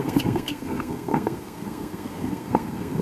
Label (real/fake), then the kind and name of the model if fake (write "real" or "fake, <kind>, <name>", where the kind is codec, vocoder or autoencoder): fake, codec, SNAC